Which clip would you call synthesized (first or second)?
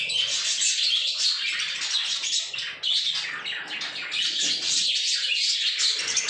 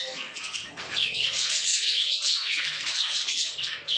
second